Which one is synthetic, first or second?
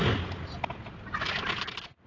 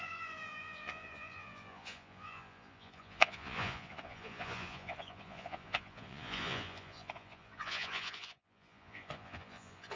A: second